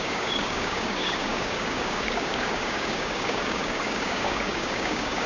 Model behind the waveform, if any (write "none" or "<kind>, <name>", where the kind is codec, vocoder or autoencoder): codec, DAC